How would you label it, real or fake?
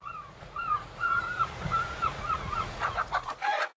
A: fake